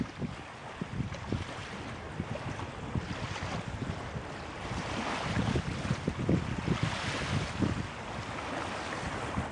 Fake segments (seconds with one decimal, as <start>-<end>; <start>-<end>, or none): none